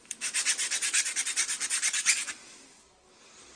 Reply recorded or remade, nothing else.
recorded